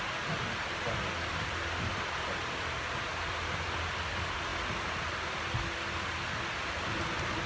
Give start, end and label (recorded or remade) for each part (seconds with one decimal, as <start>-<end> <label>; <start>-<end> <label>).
0.0-7.5 recorded